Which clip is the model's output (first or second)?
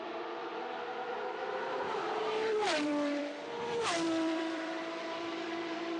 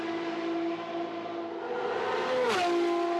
first